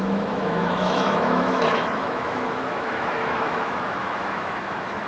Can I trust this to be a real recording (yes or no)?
no